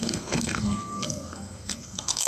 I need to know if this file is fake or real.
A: fake